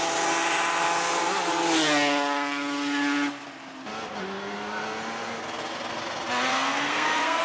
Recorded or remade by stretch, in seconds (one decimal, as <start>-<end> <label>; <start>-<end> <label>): 0.0-6.5 recorded; 6.5-7.4 remade